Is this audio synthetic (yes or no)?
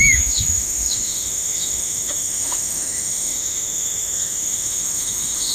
yes